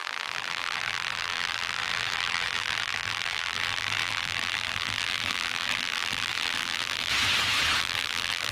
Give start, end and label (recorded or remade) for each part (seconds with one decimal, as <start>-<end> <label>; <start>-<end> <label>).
0.0-7.1 remade; 7.1-7.8 recorded; 7.8-8.5 remade